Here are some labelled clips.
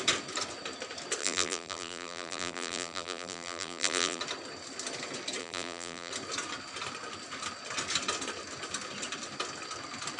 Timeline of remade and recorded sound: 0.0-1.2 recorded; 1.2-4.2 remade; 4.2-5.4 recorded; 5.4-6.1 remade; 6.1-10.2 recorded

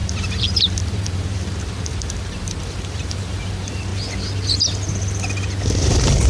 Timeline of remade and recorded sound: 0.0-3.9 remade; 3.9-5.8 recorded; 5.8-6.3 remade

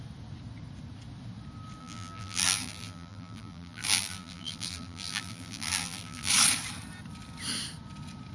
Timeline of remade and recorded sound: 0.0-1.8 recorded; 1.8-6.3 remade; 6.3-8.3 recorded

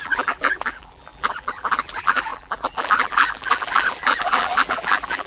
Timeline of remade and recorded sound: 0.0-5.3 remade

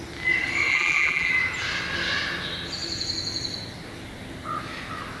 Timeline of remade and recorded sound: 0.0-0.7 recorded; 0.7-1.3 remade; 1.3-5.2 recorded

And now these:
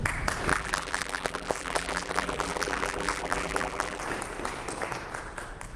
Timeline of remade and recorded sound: 0.0-0.5 recorded; 0.5-4.0 remade; 4.0-5.8 recorded